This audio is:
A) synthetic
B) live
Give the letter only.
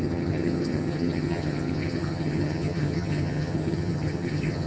A